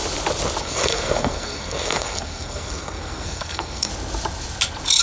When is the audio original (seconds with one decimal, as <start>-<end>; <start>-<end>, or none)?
0.0-0.6; 3.9-5.0